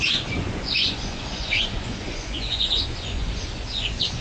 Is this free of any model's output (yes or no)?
no